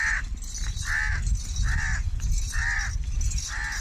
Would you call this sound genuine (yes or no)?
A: yes